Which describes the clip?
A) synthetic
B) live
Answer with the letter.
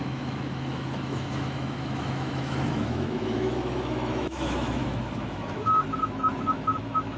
A